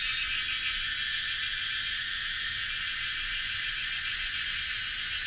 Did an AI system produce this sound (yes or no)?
yes